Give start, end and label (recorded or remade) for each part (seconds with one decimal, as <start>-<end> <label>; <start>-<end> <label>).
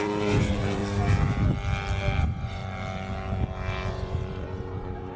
0.0-0.8 remade; 0.8-2.2 recorded; 2.2-2.6 remade; 2.6-3.9 recorded; 3.9-5.2 remade